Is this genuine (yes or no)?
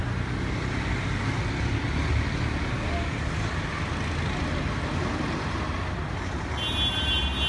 yes